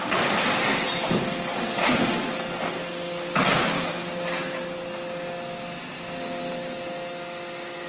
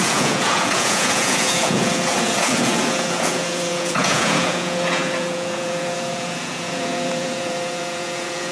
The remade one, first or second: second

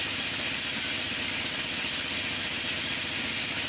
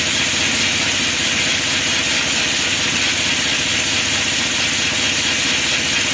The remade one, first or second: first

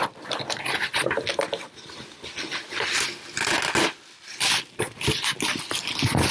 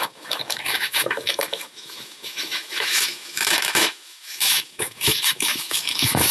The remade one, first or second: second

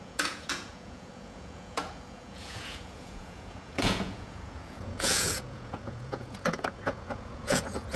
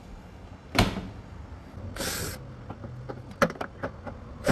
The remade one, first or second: first